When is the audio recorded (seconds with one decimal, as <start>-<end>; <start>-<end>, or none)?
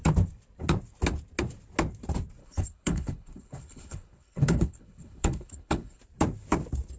0.0-2.4; 6.0-7.0